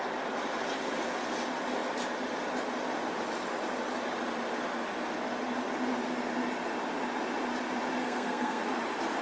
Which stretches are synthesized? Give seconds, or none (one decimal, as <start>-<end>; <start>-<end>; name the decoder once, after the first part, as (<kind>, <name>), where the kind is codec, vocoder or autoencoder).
8.0-8.6 (codec, SNAC)